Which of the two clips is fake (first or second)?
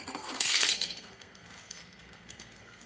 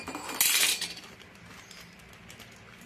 first